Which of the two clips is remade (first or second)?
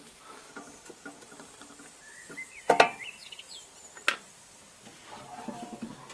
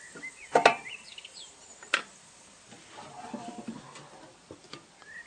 second